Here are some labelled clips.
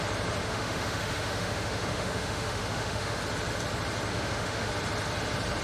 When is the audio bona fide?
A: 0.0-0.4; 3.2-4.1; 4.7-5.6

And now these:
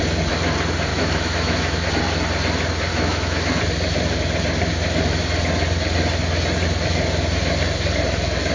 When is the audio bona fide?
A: 0.0-0.9; 1.9-2.9; 3.6-8.5

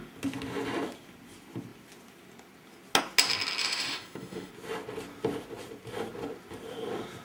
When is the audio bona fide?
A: 0.0-3.6; 4.5-7.2